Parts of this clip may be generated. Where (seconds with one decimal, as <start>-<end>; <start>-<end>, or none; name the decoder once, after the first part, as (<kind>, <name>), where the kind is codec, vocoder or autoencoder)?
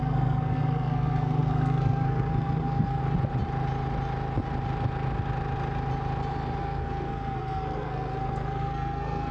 0.0-3.0 (codec, SNAC); 6.6-9.3